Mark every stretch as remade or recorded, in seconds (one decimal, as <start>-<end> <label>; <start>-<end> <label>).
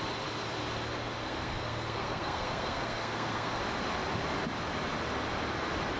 0.0-1.2 recorded; 1.2-3.6 remade; 3.6-6.0 recorded